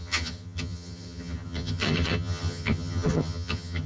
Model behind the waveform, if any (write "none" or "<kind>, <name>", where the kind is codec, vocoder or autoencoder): vocoder, HiFi-GAN